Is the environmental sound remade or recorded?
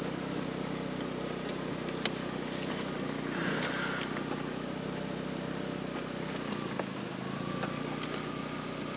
recorded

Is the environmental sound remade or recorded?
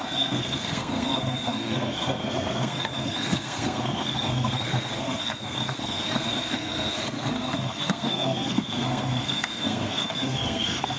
remade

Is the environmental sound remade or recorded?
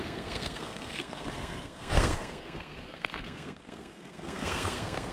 remade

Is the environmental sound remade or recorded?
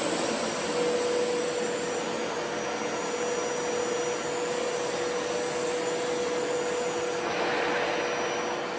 recorded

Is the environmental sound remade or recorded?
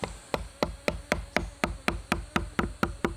recorded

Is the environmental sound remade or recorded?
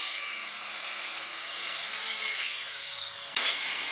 remade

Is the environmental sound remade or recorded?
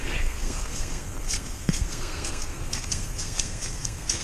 remade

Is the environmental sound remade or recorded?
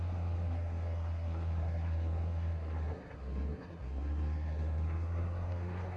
remade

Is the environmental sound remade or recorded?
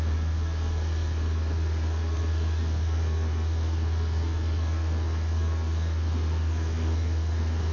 remade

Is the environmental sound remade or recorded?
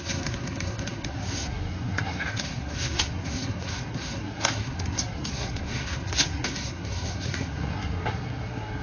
remade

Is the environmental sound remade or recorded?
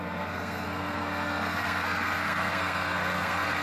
remade